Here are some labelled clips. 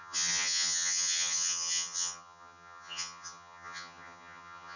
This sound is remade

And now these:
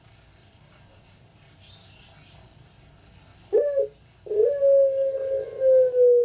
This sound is recorded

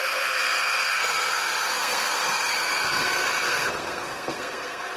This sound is remade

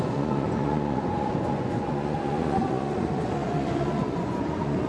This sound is remade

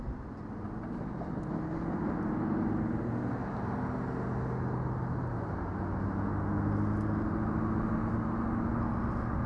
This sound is recorded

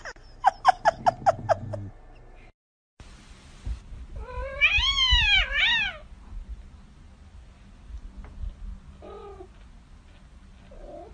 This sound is recorded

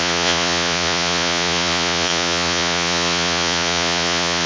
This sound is remade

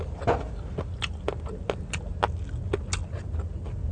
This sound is recorded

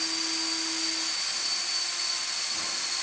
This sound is recorded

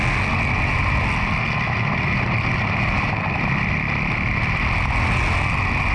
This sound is recorded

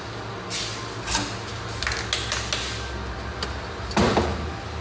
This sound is recorded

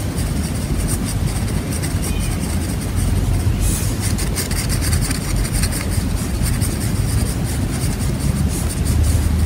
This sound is recorded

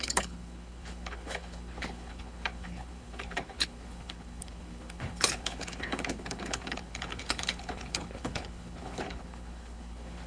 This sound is remade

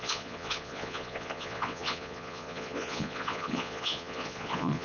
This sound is remade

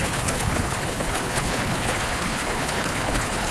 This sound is remade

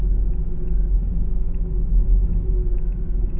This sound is remade